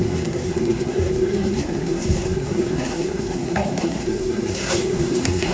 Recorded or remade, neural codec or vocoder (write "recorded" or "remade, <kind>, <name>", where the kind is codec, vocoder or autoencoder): remade, codec, SNAC